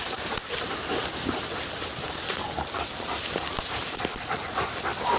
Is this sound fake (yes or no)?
no